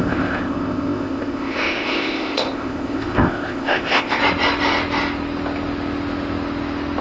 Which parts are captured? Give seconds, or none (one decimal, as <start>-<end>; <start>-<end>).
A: 4.2-7.0